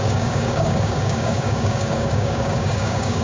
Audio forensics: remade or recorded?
remade